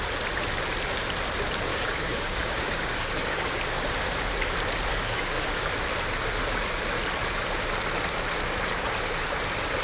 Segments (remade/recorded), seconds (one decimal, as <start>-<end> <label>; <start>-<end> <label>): 0.0-1.7 recorded; 1.7-3.9 remade; 3.9-4.9 recorded; 4.9-5.7 remade; 5.7-9.8 recorded